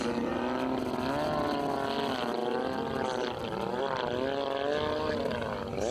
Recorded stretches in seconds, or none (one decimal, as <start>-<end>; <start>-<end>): 0.0-5.9